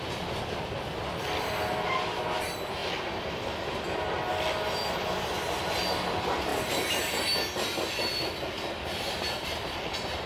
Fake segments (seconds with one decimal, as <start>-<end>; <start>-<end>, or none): none